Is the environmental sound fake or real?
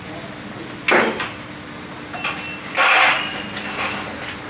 real